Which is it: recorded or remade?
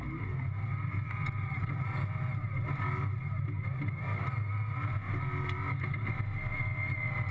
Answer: recorded